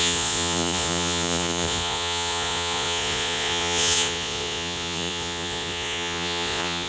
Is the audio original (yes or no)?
no